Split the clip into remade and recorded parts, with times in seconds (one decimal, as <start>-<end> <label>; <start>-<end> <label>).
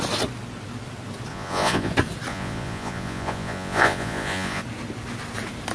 0.0-1.3 recorded; 1.3-1.9 remade; 1.9-2.3 recorded; 2.3-4.6 remade; 4.6-5.7 recorded